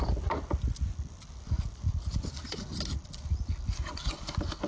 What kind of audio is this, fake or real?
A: real